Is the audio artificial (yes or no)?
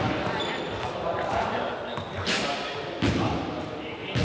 no